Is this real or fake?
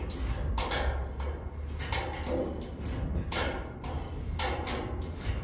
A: real